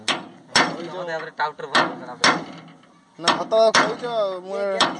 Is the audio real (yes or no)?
yes